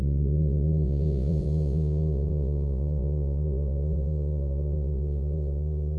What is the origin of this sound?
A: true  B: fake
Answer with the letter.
B